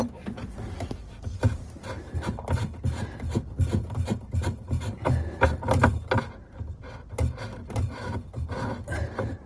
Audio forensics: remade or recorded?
recorded